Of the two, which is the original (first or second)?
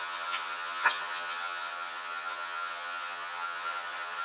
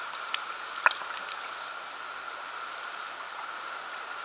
second